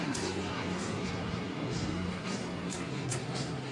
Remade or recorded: remade